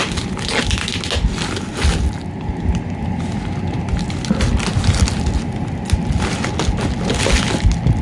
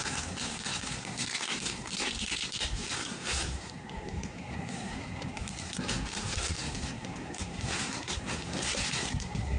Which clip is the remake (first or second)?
second